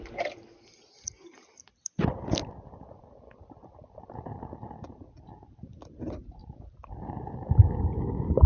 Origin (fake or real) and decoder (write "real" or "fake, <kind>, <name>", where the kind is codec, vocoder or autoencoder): real